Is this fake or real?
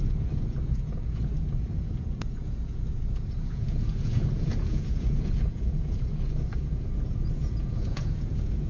fake